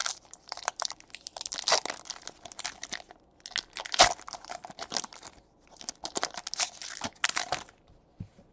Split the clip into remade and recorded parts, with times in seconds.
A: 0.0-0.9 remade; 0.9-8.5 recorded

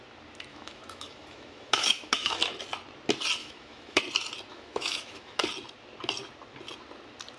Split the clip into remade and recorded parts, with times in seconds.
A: 0.0-0.5 recorded; 0.5-2.4 remade; 2.4-3.4 recorded; 3.4-4.0 remade; 4.0-4.5 recorded; 4.5-5.4 remade; 5.4-7.4 recorded

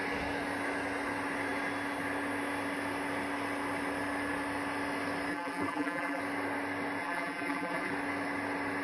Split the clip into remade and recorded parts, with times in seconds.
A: 0.0-5.3 recorded; 5.3-6.2 remade; 6.2-7.0 recorded; 7.0-7.9 remade; 7.9-8.8 recorded

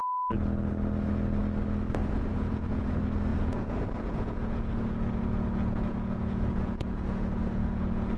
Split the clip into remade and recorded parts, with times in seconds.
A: 0.0-2.0 recorded; 2.0-2.8 remade; 2.8-3.3 recorded; 3.3-8.2 remade

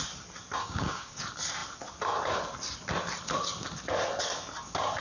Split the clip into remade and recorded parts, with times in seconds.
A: 0.0-0.6 recorded; 0.6-1.2 remade; 1.2-5.0 recorded

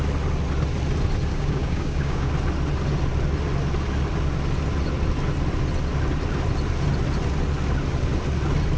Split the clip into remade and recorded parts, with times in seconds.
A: 0.0-1.3 recorded; 1.3-2.3 remade; 2.3-8.8 recorded

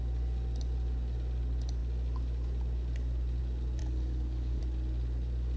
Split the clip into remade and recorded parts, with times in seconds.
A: 0.0-3.8 recorded; 3.8-4.6 remade; 4.6-5.6 recorded